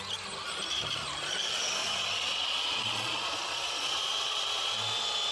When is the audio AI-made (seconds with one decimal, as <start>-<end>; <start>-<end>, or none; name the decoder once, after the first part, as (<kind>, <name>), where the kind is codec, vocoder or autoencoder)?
1.8-4.7 (vocoder, Vocos)